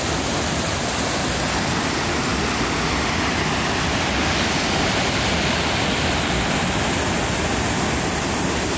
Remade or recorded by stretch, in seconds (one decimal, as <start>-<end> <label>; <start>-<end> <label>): 0.0-8.8 recorded